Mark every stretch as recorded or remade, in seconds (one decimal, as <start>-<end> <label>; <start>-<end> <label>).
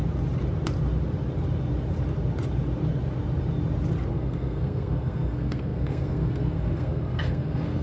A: 0.0-4.1 recorded; 4.1-7.8 remade